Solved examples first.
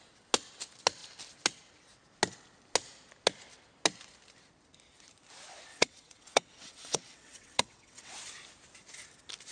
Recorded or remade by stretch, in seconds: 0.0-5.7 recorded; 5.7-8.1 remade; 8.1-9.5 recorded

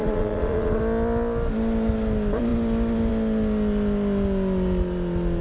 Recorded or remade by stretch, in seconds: 0.0-0.8 remade; 0.8-5.4 recorded

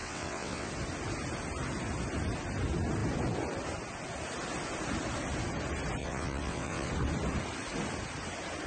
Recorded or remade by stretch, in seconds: 0.0-0.7 remade; 0.7-6.0 recorded; 6.0-6.9 remade; 6.9-8.7 recorded

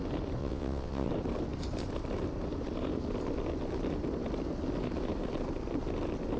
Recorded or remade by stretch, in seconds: 0.0-0.4 recorded; 0.4-1.1 remade; 1.1-6.4 recorded